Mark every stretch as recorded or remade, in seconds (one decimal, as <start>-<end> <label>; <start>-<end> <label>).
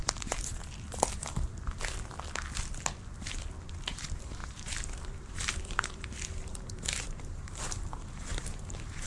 0.0-1.5 remade; 1.5-3.7 recorded; 3.7-9.1 remade